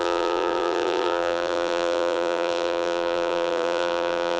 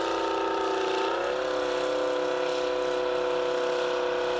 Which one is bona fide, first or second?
second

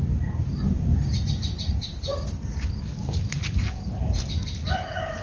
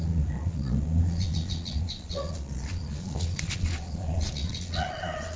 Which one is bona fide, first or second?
first